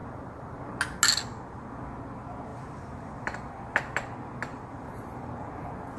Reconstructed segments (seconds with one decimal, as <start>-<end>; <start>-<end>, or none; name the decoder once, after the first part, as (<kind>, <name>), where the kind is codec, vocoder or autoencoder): 0.0-0.6 (vocoder, BigVGAN v2); 2.5-3.6; 4.5-5.3